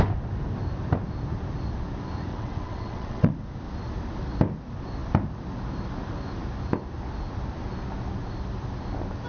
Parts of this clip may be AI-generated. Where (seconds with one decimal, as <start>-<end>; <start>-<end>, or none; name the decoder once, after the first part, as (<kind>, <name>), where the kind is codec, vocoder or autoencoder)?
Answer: 2.3-3.3 (vocoder, WaveNeXt)